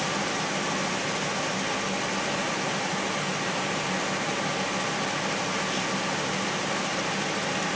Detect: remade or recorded recorded